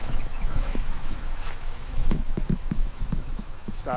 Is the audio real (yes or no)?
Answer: no